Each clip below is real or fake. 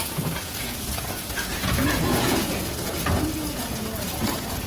fake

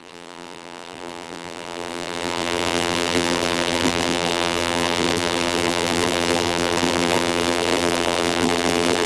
fake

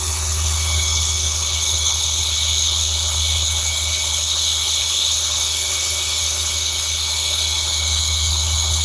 fake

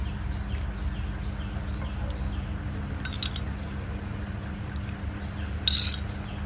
real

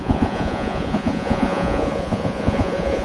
fake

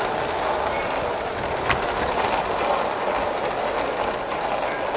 real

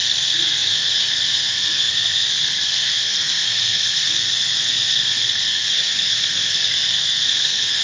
fake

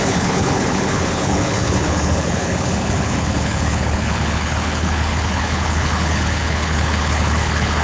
fake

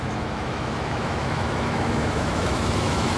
fake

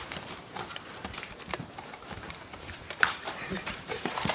fake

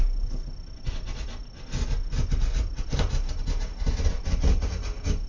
real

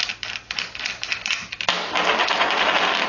real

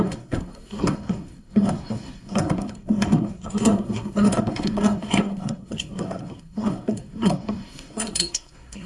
fake